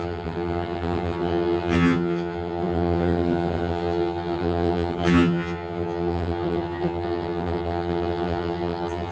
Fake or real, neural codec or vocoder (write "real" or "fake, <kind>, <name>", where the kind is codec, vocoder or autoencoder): fake, vocoder, HiFi-GAN